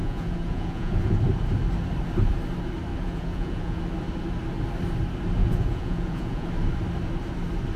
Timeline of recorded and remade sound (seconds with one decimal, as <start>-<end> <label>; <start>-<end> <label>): 0.0-1.2 remade; 1.2-2.9 recorded; 2.9-3.8 remade; 3.8-5.4 recorded; 5.4-6.5 remade; 6.5-7.8 recorded